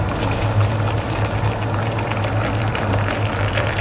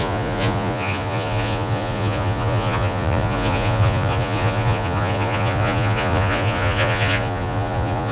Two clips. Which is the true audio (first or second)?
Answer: first